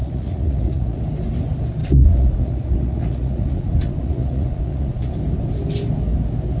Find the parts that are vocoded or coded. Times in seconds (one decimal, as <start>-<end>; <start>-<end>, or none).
0.0-1.0; 1.8-5.1